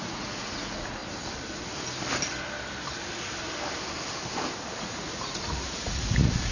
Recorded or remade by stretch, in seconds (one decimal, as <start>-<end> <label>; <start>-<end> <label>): 0.0-1.0 remade; 1.0-4.8 recorded; 4.8-6.5 remade